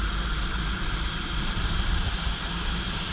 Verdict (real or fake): real